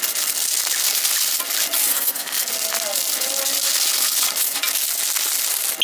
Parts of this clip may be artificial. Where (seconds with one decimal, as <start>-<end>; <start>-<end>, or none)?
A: 1.9-2.5